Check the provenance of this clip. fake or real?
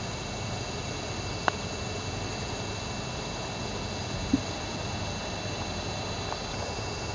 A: real